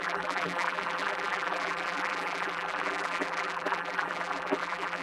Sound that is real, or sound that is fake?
fake